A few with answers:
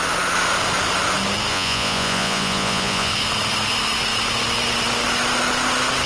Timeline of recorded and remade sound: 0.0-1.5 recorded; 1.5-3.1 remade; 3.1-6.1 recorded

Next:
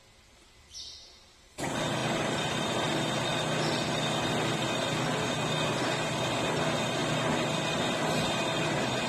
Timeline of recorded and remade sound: 0.0-2.0 recorded; 2.0-2.5 remade; 2.5-9.1 recorded

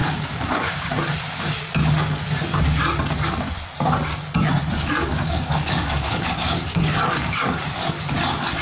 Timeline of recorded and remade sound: 0.0-0.9 remade; 0.9-5.1 recorded; 5.1-7.4 remade; 7.4-8.6 recorded

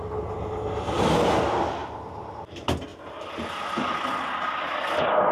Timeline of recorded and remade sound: 0.0-1.8 recorded; 1.8-2.3 remade; 2.3-5.3 recorded

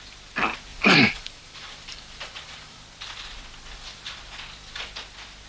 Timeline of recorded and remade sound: 0.0-0.7 recorded; 0.7-2.8 remade; 2.8-5.5 recorded